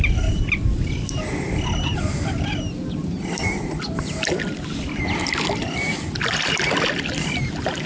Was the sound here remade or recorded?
recorded